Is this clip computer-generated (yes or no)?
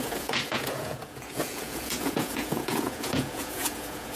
yes